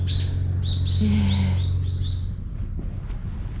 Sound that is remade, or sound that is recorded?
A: recorded